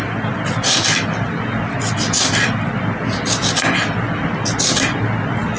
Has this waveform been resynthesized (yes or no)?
no